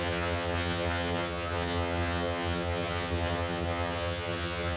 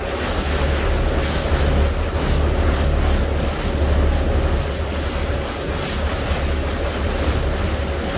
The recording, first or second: second